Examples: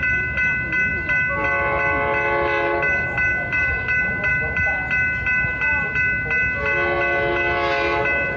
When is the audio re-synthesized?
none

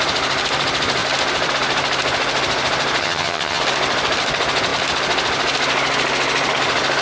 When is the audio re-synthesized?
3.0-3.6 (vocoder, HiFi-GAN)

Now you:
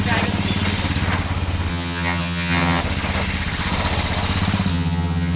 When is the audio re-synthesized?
1.7-2.8 (vocoder, HiFi-GAN); 4.7-5.4

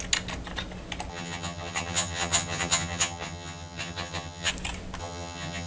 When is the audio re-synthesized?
1.1-4.5 (vocoder, HiFi-GAN); 5.0-5.7

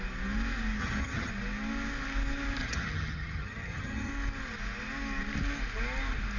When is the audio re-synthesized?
0.8-1.3 (vocoder, HiFi-GAN); 2.6-4.1

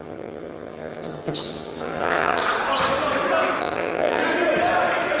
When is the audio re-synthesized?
0.0-2.4 (vocoder, HiFi-GAN); 3.6-4.2